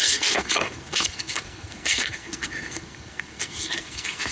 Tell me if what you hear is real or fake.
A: fake